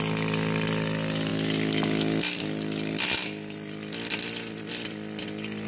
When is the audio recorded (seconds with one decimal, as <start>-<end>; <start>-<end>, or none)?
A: 0.0-5.7